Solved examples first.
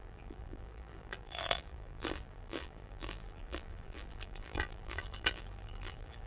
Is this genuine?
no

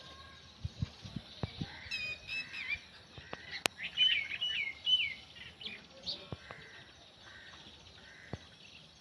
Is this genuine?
yes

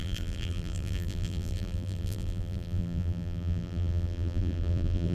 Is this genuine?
no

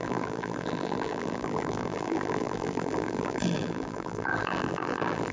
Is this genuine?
no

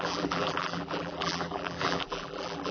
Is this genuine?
no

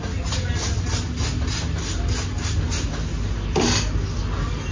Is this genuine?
yes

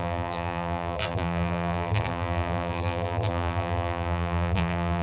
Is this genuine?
no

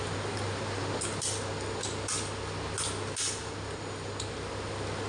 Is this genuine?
yes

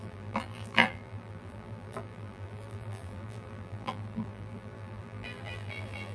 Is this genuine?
no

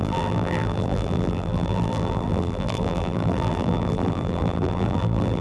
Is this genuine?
no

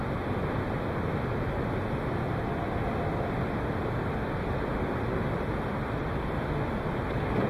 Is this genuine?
yes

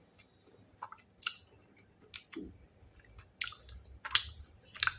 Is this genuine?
yes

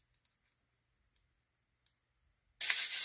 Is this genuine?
yes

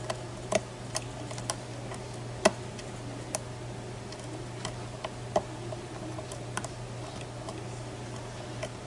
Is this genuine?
yes